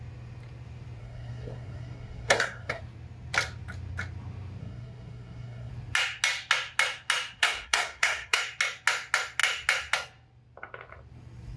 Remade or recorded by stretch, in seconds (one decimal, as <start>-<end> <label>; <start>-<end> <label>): 0.0-1.0 recorded; 1.0-2.8 remade; 2.8-4.6 recorded; 4.6-5.7 remade; 5.7-7.4 recorded; 7.4-8.4 remade; 8.4-11.6 recorded